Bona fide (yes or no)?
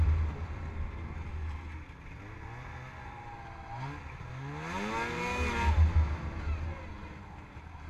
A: yes